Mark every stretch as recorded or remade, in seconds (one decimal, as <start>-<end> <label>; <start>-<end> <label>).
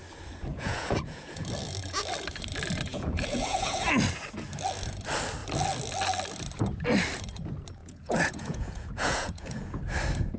0.0-0.5 recorded; 0.5-1.4 remade; 1.4-2.9 recorded; 2.9-3.9 remade; 3.9-7.8 recorded; 7.8-9.8 remade; 9.8-10.4 recorded